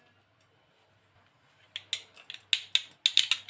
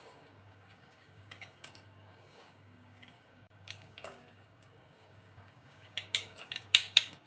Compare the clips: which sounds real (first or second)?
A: first